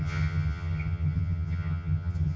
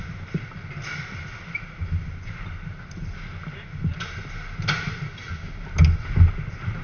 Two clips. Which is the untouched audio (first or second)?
second